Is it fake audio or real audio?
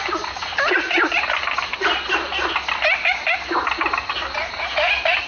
real